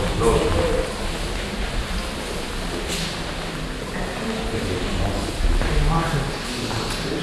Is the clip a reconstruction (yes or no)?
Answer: no